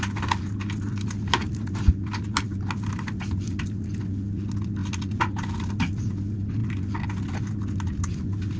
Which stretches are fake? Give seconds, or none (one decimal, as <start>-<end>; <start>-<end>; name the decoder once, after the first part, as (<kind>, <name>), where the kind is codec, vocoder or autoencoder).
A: none